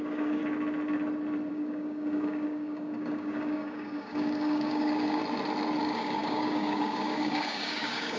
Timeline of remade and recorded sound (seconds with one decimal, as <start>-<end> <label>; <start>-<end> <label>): 0.0-0.4 remade; 0.4-1.5 recorded; 1.5-5.2 remade; 5.2-5.8 recorded; 5.8-8.2 remade